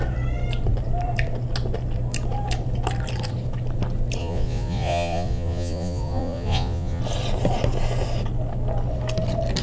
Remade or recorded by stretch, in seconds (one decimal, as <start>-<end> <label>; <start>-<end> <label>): 0.0-4.2 recorded; 4.2-7.0 remade; 7.0-9.6 recorded